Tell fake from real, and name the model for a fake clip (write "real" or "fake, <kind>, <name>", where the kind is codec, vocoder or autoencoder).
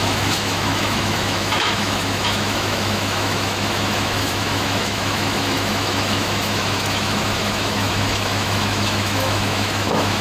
fake, autoencoder, DAC-VAE